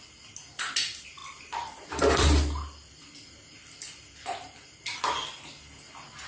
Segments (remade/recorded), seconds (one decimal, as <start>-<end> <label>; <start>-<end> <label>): 0.0-1.2 recorded; 1.2-5.0 remade; 5.0-6.3 recorded